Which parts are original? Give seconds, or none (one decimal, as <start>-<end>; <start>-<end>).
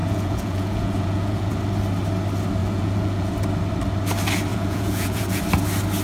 1.5-2.6; 3.3-4.5; 5.4-6.0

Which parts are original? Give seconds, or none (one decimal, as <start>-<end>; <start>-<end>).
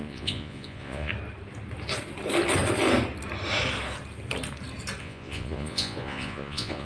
1.1-5.0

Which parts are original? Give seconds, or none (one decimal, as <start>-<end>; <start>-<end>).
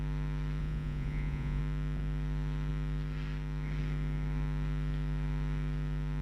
0.0-0.6; 1.6-6.2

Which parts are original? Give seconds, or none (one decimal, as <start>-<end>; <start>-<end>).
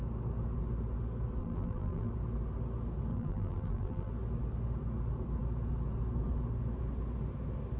0.0-1.4; 2.1-3.1; 4.1-7.8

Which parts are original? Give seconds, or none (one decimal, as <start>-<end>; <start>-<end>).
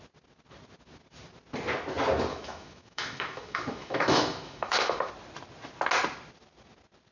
0.0-2.3; 5.1-7.1